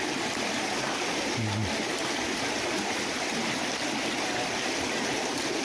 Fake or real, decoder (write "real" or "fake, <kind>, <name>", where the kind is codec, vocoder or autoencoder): real